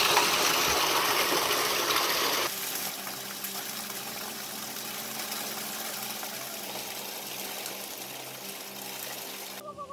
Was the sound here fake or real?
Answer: real